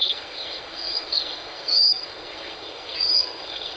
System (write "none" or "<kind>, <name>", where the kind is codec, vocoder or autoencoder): codec, SNAC